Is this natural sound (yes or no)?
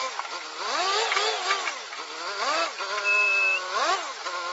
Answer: yes